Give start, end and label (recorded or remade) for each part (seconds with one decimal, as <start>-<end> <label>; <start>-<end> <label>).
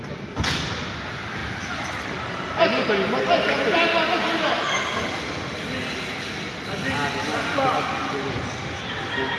0.0-9.4 recorded